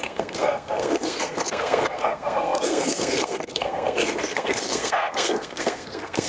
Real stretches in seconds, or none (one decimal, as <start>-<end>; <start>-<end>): none